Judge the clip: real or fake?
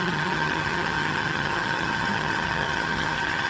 fake